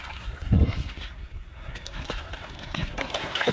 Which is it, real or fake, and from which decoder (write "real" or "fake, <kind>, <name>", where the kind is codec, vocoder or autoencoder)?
fake, codec, SNAC